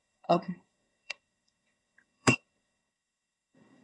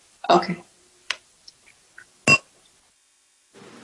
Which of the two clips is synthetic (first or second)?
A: first